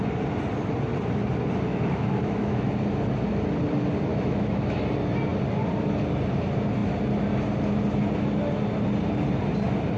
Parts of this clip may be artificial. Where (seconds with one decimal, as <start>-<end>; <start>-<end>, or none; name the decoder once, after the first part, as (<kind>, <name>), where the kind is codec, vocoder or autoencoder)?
1.7-2.7 (autoencoder, DAC-VAE); 4.1-4.8